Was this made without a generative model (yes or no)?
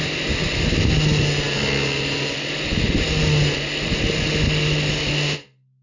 yes